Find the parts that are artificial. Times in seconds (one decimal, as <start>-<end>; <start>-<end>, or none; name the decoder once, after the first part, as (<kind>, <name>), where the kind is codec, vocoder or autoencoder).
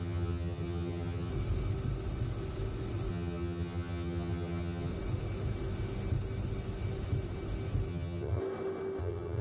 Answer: 0.0-1.3 (vocoder, HiFi-GAN); 3.1-4.9; 7.9-8.4; 9.0-9.4